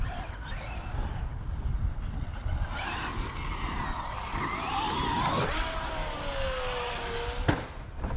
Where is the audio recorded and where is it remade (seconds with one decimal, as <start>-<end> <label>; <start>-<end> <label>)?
0.0-8.2 recorded